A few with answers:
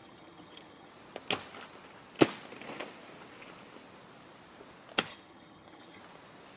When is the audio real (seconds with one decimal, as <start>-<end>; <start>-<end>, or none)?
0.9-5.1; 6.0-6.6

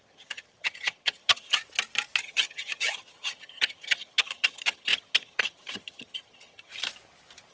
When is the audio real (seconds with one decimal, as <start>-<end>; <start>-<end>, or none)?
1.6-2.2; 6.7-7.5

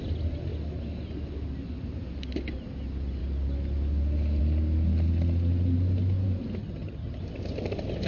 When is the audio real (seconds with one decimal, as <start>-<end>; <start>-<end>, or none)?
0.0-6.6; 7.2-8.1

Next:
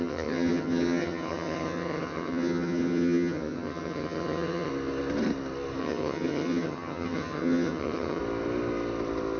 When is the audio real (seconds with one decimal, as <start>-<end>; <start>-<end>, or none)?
4.7-5.8; 8.2-9.4

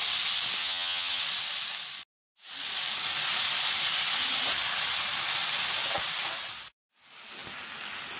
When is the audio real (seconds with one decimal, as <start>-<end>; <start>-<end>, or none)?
0.0-0.6; 1.2-8.2